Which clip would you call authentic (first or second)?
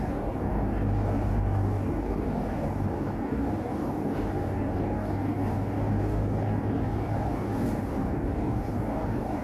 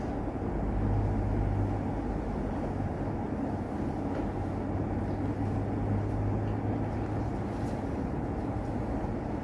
second